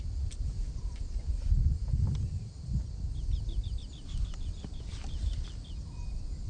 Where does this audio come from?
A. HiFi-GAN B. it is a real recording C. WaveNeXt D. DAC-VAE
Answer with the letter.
B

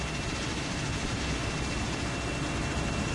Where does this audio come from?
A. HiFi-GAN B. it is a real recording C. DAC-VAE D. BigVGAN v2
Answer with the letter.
B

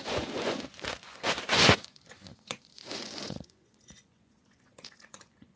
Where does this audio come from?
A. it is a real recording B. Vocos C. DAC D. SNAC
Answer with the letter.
B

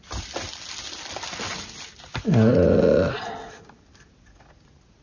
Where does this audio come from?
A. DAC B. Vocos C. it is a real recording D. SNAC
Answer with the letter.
C